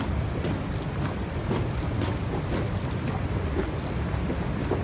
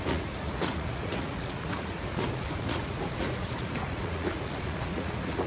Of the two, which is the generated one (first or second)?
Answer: second